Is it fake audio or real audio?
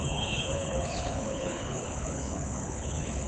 fake